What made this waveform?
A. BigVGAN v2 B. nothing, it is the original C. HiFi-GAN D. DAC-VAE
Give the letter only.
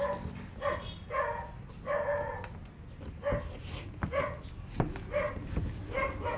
B